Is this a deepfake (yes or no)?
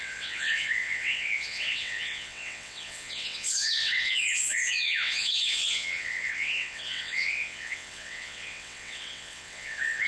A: yes